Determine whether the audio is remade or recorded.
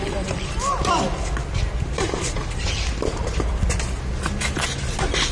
recorded